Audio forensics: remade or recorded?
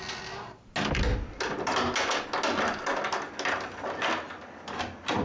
recorded